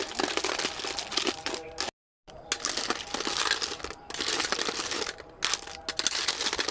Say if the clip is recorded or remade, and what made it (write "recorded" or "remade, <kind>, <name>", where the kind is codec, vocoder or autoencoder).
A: recorded